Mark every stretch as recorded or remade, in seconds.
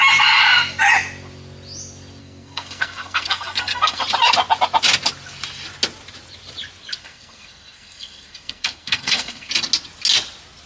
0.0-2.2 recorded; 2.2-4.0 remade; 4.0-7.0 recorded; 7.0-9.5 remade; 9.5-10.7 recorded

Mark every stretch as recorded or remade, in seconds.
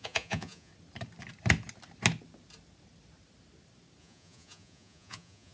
0.0-0.7 remade; 0.7-4.0 recorded; 4.0-5.5 remade